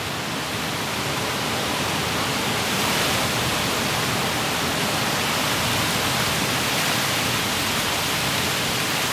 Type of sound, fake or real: real